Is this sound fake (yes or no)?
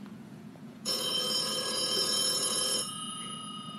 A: yes